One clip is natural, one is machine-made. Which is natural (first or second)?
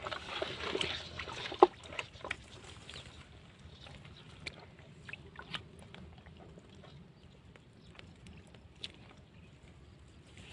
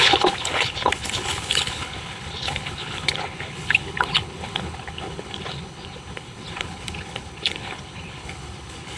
first